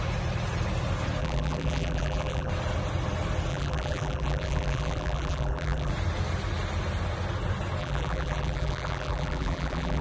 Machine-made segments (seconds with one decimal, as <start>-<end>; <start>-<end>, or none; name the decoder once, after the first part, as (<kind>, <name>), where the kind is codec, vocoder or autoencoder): 1.2-2.5 (vocoder, BigVGAN v2); 3.5-5.9; 7.8-10.0